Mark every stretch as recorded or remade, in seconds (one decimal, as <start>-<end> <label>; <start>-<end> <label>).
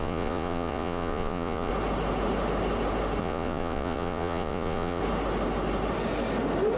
0.0-1.7 remade; 1.7-3.2 recorded; 3.2-5.0 remade; 5.0-6.8 recorded